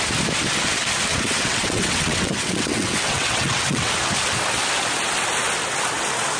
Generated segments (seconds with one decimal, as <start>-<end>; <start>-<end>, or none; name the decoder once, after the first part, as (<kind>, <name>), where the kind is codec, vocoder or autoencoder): 1.1-3.9 (vocoder, WaveNeXt)